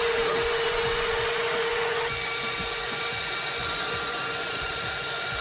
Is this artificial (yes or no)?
yes